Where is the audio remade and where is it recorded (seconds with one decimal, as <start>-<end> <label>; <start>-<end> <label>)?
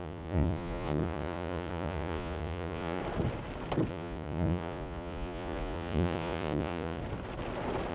0.0-3.0 remade; 3.0-3.9 recorded; 3.9-7.0 remade; 7.0-7.9 recorded